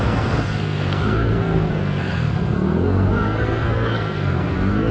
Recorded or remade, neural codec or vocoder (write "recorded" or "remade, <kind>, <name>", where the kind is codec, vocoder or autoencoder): remade, codec, SNAC